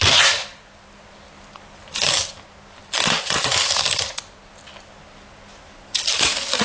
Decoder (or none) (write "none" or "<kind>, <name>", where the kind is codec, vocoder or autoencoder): none